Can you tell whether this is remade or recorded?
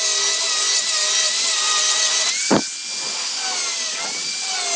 recorded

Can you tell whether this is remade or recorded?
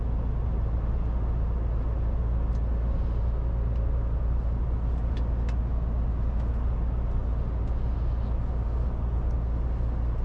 recorded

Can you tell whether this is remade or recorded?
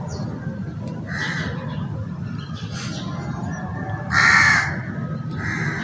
recorded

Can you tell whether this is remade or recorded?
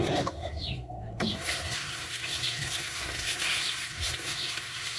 remade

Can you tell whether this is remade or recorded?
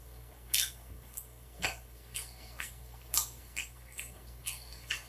remade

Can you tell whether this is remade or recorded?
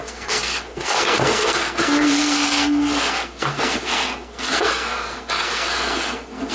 remade